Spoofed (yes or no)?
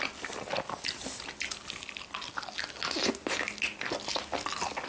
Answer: no